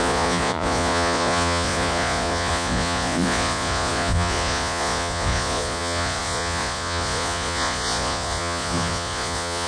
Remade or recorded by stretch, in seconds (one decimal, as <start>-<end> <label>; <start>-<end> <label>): 0.0-9.7 remade